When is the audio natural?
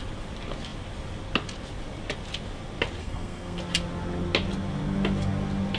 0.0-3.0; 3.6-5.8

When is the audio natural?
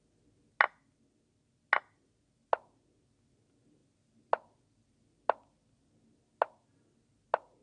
0.0-7.6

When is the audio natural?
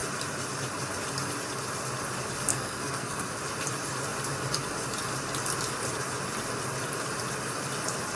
0.0-2.5; 3.4-8.2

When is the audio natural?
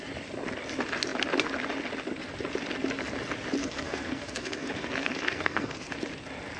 0.0-3.6; 5.9-6.6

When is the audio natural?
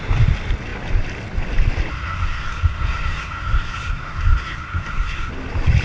0.0-1.9; 5.3-5.8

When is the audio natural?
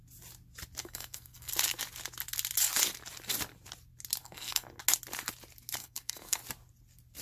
0.0-0.8; 1.5-4.2; 4.8-5.8; 6.4-7.2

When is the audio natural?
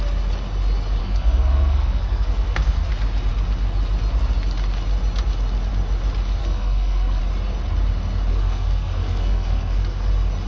0.0-1.0; 2.9-6.4; 7.2-8.3; 10.1-10.5